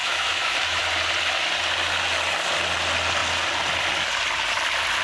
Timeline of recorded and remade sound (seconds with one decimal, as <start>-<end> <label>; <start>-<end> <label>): 0.0-0.8 remade; 0.8-5.0 recorded